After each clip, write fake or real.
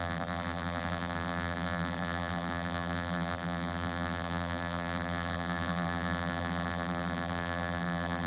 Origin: fake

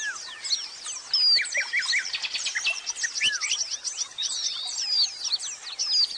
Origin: real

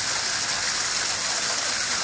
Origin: real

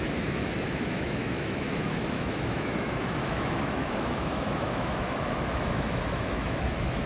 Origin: fake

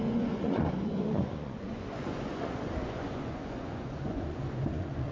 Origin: fake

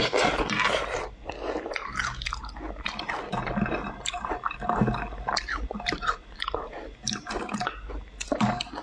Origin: real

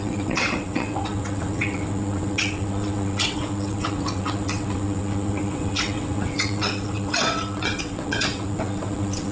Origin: fake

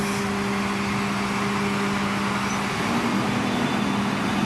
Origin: real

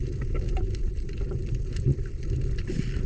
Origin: real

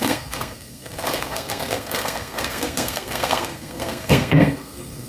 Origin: fake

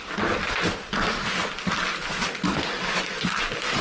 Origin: real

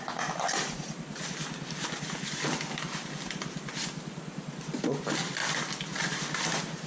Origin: real